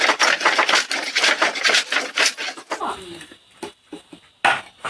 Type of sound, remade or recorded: recorded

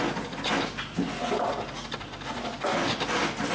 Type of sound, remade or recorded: recorded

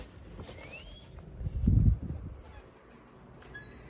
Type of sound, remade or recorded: recorded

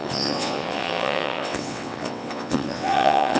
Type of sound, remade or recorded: remade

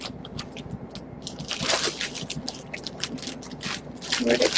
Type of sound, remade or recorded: recorded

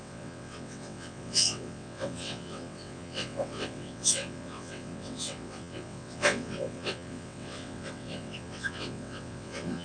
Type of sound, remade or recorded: remade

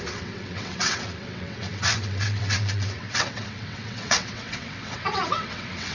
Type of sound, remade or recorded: remade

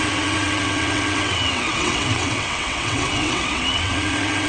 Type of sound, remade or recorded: remade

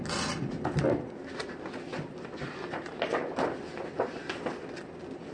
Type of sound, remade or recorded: recorded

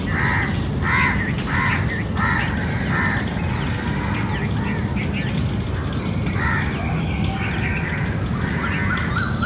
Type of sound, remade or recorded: recorded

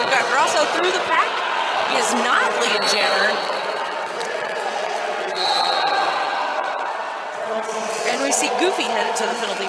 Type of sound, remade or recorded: remade